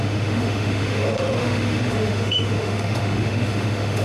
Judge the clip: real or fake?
fake